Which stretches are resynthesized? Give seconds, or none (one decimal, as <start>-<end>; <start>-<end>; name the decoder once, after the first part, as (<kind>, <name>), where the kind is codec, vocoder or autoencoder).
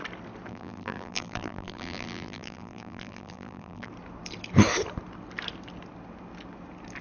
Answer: 0.5-3.9 (vocoder, BigVGAN v2)